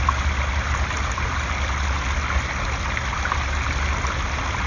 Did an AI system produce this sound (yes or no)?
no